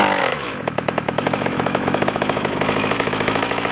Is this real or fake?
fake